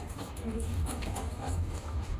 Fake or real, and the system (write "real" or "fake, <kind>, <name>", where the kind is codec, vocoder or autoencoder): fake, codec, DAC